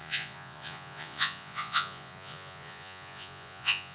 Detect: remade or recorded remade